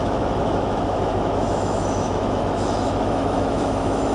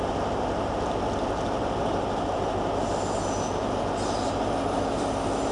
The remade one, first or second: first